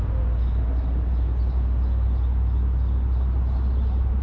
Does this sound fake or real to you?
real